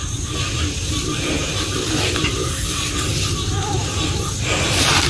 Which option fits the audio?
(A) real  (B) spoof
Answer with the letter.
A